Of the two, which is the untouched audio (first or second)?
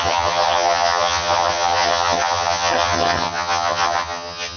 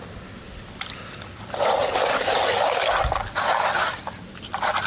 second